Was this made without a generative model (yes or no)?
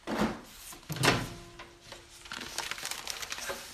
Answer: yes